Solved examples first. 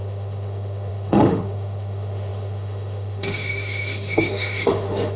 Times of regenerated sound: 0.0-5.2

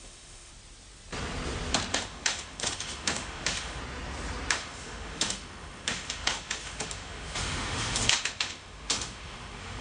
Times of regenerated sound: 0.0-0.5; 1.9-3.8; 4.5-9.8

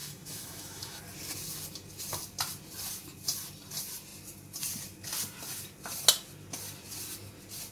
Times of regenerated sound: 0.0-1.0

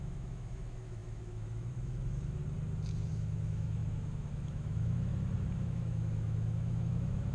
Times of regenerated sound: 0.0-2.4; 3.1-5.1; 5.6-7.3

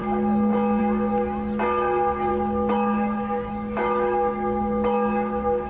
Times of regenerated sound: 2.3-5.7

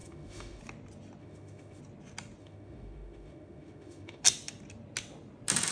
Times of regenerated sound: 0.0-0.6; 1.2-1.8; 2.4-4.2

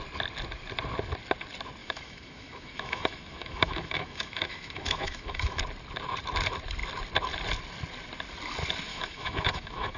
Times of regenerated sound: 1.8-5.6; 8.9-10.0

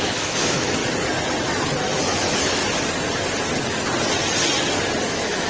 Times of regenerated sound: 0.0-0.8; 1.8-2.6; 5.1-5.5